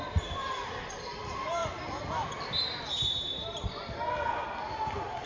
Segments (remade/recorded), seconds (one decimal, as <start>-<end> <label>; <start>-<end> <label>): 0.0-5.3 recorded